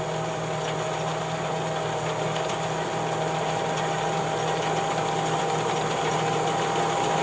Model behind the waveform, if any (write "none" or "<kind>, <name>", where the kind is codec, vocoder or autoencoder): none